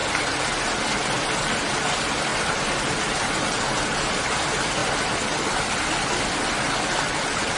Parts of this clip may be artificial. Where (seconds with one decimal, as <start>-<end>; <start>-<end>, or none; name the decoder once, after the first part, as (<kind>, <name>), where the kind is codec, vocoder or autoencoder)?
none